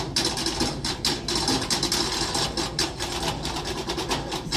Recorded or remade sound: recorded